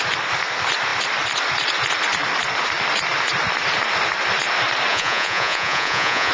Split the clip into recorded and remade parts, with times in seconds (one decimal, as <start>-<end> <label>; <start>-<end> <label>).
0.0-4.9 recorded; 4.9-6.3 remade